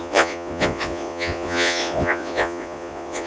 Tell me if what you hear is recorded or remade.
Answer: remade